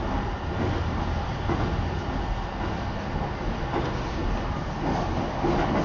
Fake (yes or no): no